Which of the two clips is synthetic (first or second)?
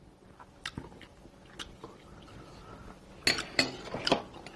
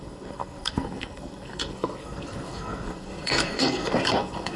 second